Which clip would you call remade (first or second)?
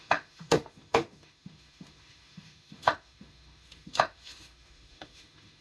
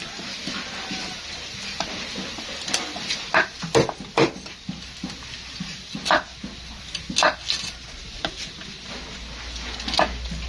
first